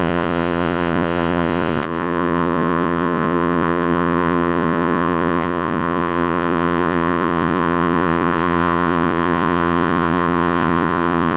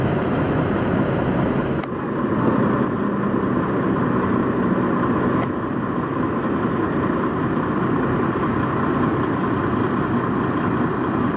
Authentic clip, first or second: second